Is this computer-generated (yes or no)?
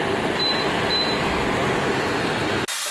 no